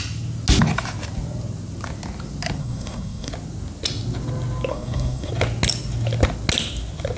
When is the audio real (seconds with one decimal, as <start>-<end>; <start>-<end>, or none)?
0.0-2.6; 3.3-4.7; 5.3-7.2